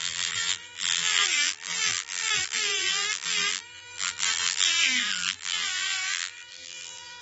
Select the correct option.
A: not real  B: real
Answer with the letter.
A